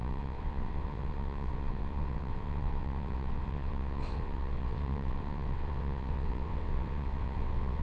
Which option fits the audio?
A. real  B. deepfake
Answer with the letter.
B